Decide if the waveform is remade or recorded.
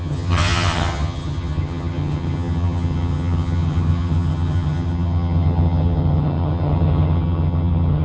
remade